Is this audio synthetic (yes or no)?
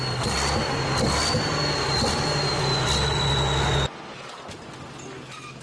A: no